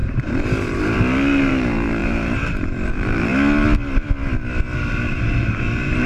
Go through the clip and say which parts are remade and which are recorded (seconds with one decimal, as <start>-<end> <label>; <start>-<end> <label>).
0.0-3.3 remade; 3.3-4.9 recorded; 4.9-6.1 remade